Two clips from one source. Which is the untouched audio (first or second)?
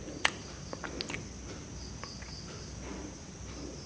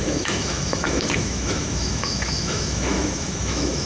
first